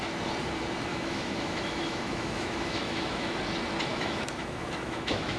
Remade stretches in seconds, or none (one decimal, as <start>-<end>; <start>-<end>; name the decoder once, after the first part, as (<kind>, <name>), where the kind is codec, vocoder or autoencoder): 0.9-3.4 (autoencoder, DAC-VAE); 3.9-5.4